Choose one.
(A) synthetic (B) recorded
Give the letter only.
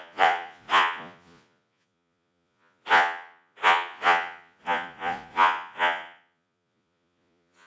A